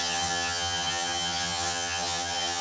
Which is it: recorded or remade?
remade